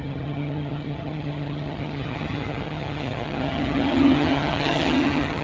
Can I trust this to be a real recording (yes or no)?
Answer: no